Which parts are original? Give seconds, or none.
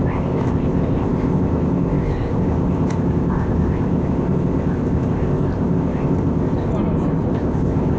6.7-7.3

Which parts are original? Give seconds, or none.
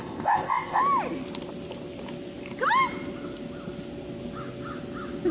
0.8-5.3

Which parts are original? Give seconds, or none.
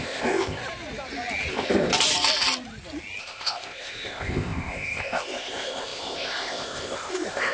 0.6-1.5; 1.9-3.2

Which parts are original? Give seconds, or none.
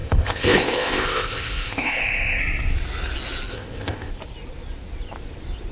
2.4-3.5; 4.1-5.7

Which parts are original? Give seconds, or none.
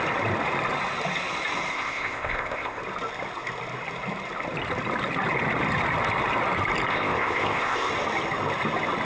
0.0-1.7; 2.8-6.9; 7.9-9.0